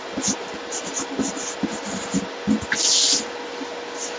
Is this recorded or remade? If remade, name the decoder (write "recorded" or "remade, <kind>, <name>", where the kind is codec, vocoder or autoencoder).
recorded